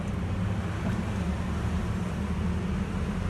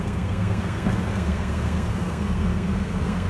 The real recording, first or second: first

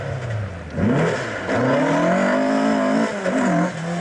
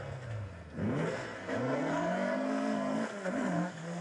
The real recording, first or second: first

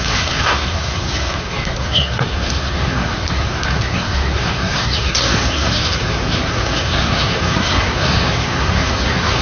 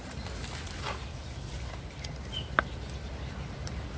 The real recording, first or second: second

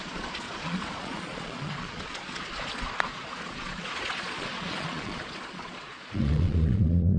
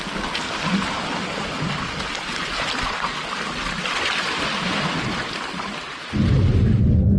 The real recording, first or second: second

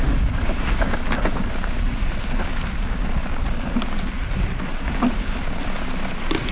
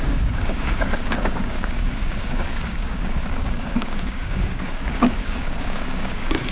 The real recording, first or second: first